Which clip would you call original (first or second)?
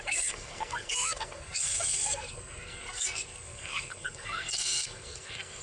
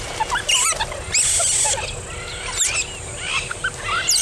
second